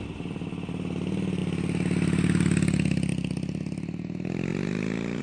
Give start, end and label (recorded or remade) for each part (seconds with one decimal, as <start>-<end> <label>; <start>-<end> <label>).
0.0-5.2 recorded